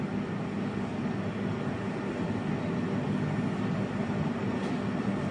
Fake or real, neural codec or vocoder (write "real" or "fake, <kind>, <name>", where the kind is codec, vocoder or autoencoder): real